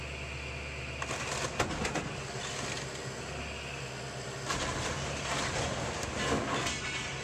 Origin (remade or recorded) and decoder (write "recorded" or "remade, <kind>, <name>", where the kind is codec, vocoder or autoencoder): recorded